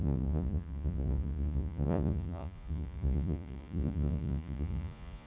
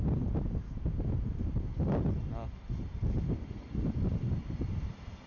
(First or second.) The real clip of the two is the second